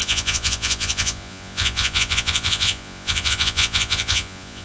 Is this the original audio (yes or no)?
no